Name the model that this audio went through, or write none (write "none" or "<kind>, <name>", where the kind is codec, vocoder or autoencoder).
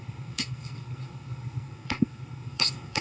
codec, SNAC